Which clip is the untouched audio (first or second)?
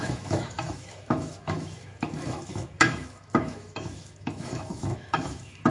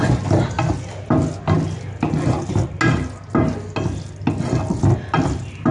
second